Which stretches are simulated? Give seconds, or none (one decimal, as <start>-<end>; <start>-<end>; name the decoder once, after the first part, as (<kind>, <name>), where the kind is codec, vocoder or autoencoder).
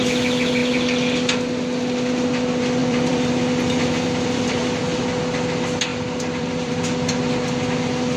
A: 2.8-5.0 (vocoder, BigVGAN v2); 5.9-6.7